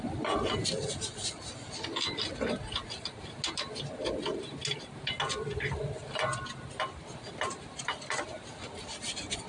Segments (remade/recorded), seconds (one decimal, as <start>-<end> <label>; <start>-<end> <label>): 0.0-9.5 recorded